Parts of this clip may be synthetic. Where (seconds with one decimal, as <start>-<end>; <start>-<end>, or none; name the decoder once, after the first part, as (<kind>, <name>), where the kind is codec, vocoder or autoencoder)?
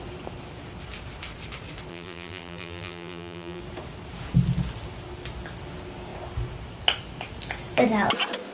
1.9-3.6 (vocoder, BigVGAN v2)